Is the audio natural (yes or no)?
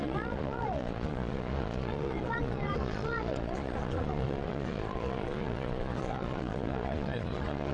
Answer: no